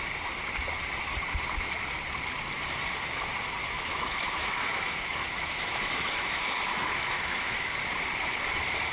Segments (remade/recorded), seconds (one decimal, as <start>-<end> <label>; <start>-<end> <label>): 0.0-3.6 recorded; 3.6-7.7 remade; 7.7-8.9 recorded